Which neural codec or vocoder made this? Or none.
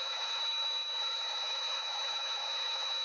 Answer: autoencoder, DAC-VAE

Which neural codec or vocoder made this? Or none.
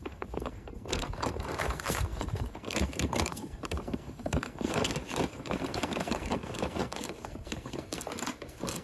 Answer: codec, SNAC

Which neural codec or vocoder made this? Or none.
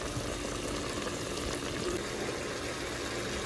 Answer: none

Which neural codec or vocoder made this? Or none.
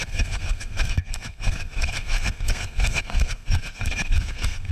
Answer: codec, SNAC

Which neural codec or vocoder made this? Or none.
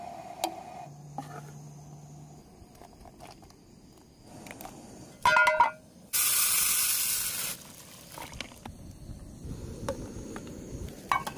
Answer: none